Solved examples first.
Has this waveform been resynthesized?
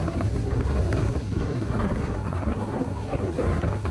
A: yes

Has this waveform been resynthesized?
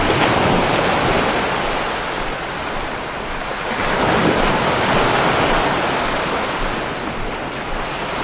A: no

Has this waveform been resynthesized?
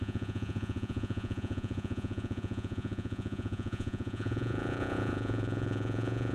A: yes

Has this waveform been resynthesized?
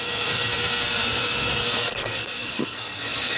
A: yes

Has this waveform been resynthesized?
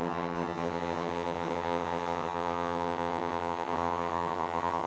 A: yes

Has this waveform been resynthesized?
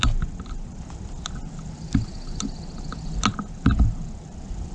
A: no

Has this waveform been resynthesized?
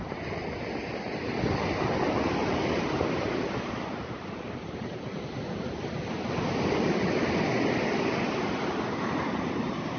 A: no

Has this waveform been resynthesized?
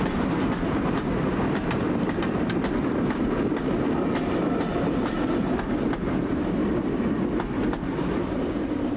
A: no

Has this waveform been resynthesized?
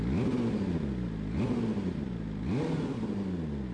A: no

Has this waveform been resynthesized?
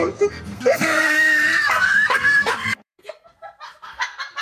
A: yes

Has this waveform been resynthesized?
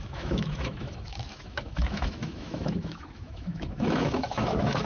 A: yes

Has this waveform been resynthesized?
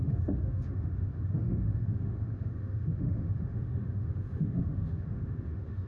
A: yes